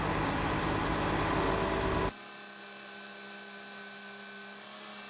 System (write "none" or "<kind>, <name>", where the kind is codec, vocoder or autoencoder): none